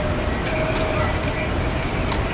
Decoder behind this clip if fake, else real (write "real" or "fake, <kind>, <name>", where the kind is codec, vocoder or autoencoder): real